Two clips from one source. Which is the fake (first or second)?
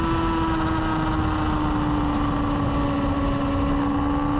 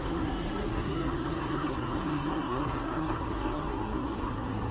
second